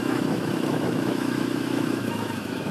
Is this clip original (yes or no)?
no